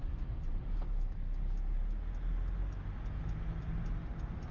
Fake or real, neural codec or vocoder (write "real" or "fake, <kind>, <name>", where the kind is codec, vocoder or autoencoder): real